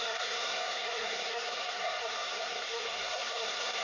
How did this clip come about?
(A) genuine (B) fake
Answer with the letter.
B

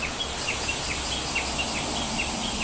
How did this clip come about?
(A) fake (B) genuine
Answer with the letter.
B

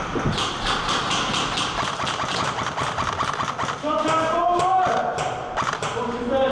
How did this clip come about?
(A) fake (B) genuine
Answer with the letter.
B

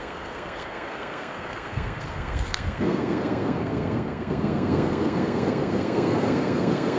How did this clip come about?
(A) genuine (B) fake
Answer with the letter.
B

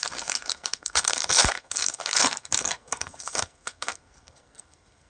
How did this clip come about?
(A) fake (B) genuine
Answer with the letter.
A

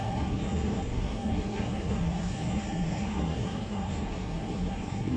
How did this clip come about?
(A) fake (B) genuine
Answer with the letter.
A